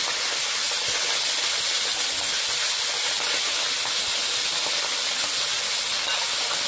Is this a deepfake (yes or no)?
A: no